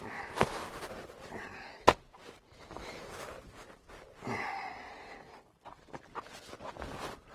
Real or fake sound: real